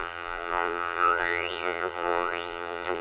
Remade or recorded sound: remade